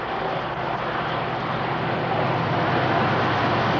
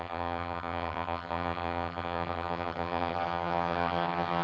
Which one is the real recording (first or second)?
first